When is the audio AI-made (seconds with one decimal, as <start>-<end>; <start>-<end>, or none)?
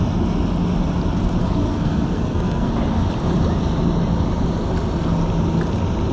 1.4-2.7